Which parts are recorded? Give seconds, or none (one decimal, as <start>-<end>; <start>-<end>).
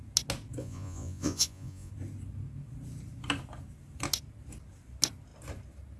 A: 0.0-0.6; 1.9-6.0